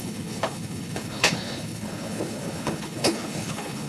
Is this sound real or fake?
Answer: fake